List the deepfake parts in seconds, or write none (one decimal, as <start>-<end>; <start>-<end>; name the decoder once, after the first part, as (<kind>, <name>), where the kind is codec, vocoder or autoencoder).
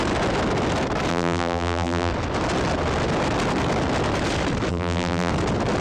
1.1-2.1 (vocoder, BigVGAN v2); 4.7-5.3